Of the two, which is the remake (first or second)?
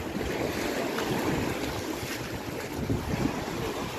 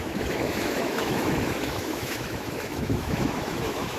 second